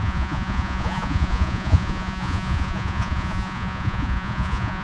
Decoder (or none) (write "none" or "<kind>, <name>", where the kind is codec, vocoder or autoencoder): vocoder, Vocos